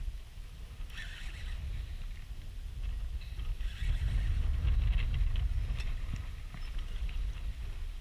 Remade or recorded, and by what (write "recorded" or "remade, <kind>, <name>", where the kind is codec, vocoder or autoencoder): recorded